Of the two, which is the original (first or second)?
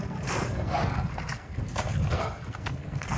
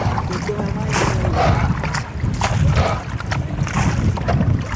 second